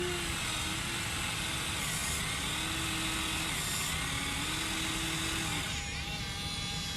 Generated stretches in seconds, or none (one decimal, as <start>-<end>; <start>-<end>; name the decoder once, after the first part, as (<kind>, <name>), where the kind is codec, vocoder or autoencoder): none

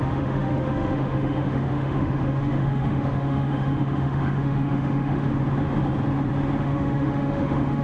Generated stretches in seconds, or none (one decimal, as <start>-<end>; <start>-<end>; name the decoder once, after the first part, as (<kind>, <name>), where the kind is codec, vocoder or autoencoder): 0.0-5.3 (autoencoder, DAC-VAE); 6.6-7.8

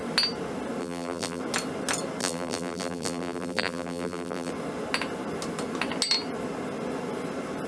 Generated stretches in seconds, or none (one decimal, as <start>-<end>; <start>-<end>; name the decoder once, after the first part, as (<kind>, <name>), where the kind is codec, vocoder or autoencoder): 0.8-1.4 (vocoder, BigVGAN v2); 2.2-4.5

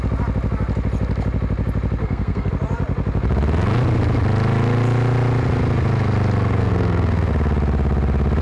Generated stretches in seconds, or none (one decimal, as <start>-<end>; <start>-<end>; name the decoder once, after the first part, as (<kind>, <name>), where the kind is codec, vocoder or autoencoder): 2.0-2.5 (codec, SNAC); 6.6-7.3

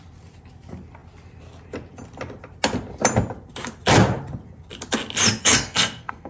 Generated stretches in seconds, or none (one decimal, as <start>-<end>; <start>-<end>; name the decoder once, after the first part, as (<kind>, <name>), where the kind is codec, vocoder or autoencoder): 5.4-6.3 (codec, SNAC)

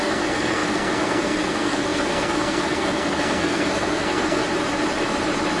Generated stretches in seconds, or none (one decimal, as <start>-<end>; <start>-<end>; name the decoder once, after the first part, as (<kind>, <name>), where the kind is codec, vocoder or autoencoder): 0.0-4.4 (codec, SNAC)

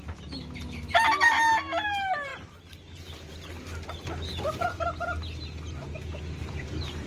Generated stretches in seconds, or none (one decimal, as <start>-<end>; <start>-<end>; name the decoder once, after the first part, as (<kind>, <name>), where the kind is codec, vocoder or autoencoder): none

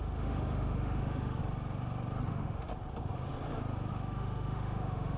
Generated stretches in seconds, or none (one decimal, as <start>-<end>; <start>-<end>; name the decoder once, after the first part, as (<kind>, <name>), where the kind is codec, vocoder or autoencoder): 0.0-1.4 (autoencoder, DAC-VAE); 2.3-2.7; 3.9-5.2